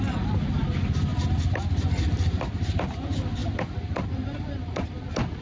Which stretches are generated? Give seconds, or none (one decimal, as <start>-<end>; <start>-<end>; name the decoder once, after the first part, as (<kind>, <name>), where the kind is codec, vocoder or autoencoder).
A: 1.1-1.7 (vocoder, BigVGAN v2)